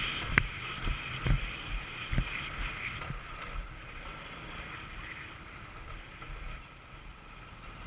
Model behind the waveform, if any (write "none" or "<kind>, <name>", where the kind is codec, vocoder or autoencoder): none